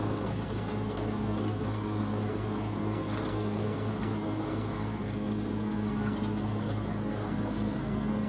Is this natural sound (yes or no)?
no